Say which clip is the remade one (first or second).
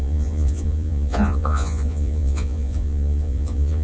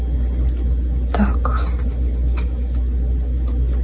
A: first